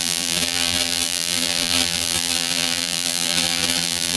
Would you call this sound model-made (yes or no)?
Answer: yes